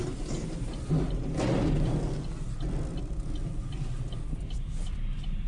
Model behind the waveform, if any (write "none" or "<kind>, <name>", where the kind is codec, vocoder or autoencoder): none